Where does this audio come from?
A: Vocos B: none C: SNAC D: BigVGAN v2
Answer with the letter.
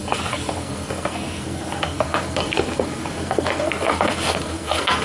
C